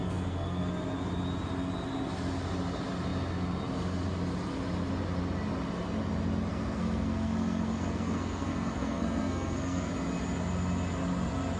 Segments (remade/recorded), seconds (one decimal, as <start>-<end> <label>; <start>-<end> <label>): 0.0-0.7 remade; 0.7-6.5 recorded; 6.5-9.9 remade; 9.9-11.6 recorded